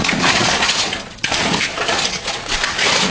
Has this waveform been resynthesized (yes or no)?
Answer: yes